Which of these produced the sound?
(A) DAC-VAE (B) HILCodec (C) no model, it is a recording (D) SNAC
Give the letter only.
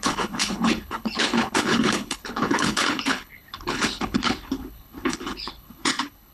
B